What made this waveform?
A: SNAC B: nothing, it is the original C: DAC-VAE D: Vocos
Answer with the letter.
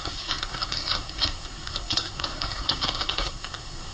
A